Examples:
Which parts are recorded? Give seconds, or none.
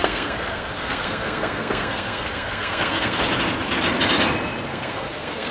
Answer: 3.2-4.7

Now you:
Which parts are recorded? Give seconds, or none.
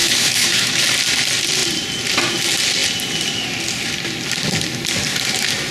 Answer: 0.7-5.7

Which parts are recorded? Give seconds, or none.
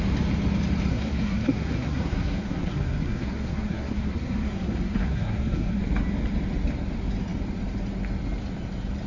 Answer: 0.0-0.9; 5.8-9.1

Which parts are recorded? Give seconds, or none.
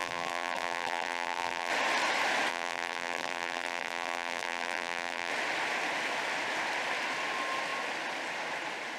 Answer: 1.7-2.5; 5.3-9.0